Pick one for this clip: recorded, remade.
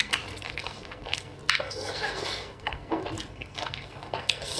remade